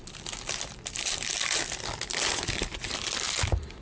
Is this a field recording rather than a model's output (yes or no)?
yes